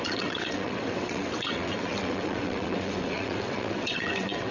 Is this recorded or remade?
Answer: remade